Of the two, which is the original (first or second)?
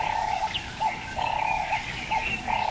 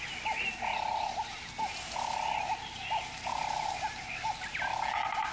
second